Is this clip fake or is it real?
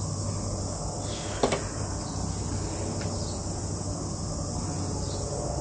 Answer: real